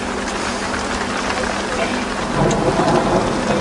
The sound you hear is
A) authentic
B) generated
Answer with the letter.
A